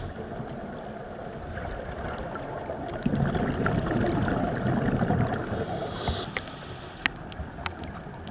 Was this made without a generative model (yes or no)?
yes